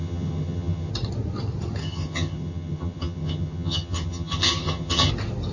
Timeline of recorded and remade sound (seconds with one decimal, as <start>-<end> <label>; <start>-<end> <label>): 0.0-0.9 remade; 0.9-1.8 recorded; 1.8-5.1 remade; 5.1-5.5 recorded